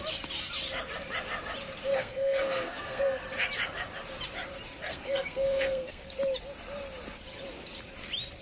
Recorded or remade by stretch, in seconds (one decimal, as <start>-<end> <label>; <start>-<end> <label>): 0.0-1.9 recorded; 1.9-3.2 remade; 3.2-4.9 recorded; 4.9-6.0 remade; 6.0-8.4 recorded